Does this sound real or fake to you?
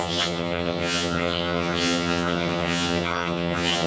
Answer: fake